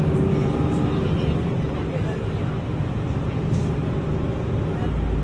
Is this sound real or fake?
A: real